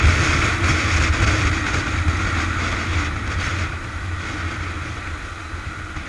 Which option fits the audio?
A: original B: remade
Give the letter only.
A